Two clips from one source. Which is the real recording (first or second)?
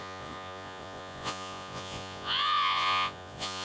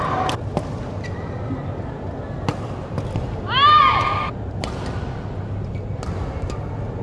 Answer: second